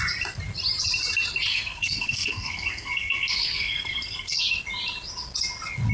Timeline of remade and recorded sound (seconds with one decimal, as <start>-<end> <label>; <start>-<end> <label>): 0.0-1.5 recorded; 1.5-4.4 remade; 4.4-5.9 recorded